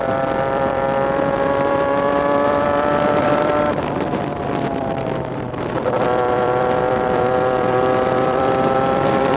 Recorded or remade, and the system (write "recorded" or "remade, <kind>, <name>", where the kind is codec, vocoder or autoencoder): remade, vocoder, BigVGAN v2